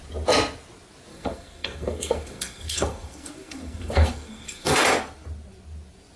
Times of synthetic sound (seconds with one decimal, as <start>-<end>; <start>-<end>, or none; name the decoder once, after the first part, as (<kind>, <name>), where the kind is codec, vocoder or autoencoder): 1.1-4.8 (codec, SNAC)